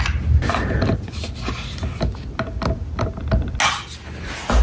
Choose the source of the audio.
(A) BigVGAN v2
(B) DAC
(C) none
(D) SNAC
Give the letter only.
C